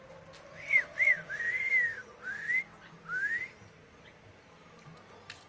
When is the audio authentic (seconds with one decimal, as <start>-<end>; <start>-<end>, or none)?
0.0-5.5

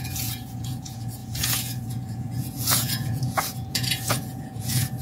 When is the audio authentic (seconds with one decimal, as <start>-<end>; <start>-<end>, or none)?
none